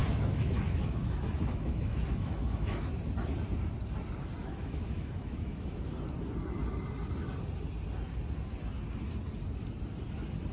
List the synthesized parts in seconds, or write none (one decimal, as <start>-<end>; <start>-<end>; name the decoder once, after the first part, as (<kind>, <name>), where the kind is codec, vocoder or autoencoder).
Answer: 0.0-2.9 (autoencoder, DAC-VAE); 4.4-5.9